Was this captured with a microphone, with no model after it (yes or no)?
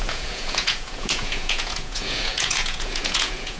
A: no